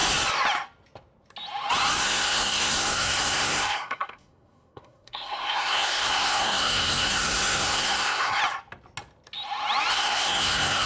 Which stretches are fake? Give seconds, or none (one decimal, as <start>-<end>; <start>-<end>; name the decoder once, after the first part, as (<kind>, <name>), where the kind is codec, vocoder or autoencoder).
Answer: 2.0-8.4 (codec, SNAC); 9.9-10.9